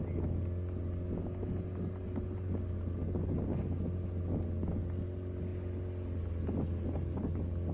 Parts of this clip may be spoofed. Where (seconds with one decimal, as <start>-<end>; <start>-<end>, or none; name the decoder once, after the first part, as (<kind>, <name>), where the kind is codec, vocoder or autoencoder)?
none